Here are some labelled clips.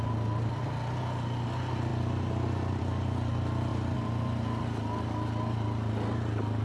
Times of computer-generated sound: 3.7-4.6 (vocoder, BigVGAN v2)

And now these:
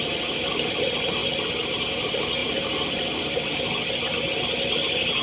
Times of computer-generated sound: 2.4-4.1 (vocoder, BigVGAN v2)

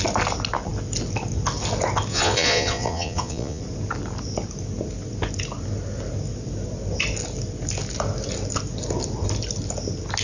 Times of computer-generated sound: 2.1-3.6 (vocoder, Vocos)